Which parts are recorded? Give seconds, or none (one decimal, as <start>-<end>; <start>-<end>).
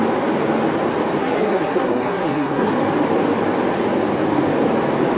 0.0-1.2; 2.7-5.2